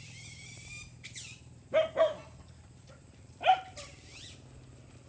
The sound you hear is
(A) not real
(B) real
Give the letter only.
B